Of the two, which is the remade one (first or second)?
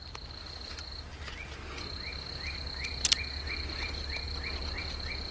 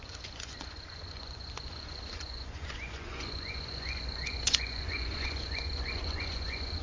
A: second